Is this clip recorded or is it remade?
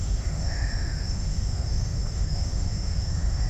remade